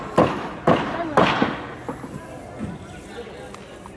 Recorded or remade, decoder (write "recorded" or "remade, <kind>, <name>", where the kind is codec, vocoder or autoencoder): recorded